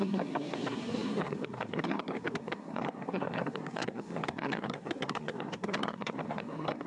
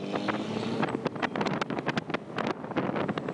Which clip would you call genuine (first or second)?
second